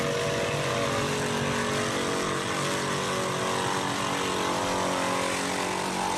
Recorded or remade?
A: recorded